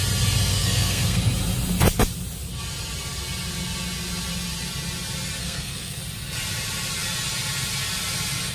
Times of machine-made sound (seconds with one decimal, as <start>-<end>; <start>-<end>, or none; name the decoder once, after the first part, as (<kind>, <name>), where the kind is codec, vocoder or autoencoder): 0.5-1.2 (codec, SNAC); 5.4-6.0